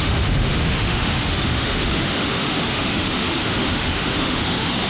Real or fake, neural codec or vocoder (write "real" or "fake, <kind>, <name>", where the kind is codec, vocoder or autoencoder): fake, autoencoder, DAC-VAE